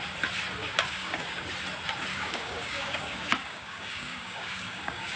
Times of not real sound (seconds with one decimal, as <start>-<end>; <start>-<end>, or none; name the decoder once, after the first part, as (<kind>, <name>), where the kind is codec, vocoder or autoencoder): 0.6-1.5 (codec, DAC); 2.1-5.2